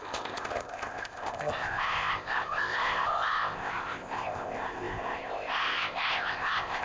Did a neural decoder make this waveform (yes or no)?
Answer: yes